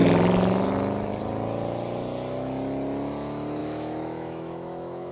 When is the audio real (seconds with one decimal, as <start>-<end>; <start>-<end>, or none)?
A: 0.0-3.6